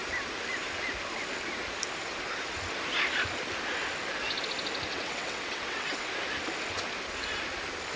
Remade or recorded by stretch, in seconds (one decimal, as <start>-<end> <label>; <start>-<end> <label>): 0.0-4.9 recorded; 4.9-6.1 remade; 6.1-8.0 recorded